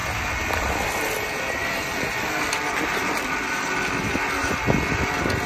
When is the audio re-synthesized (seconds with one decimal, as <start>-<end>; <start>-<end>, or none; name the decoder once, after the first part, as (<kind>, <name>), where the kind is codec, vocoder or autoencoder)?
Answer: none